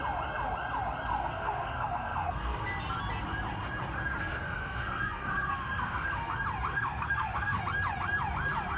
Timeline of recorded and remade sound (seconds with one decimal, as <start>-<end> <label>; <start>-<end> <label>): 0.0-1.1 recorded; 1.1-2.7 remade; 2.7-4.2 recorded; 4.2-6.3 remade; 6.3-6.7 recorded; 6.7-7.6 remade; 7.6-8.8 recorded